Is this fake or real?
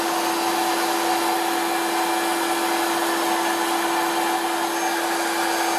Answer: real